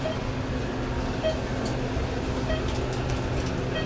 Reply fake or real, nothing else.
real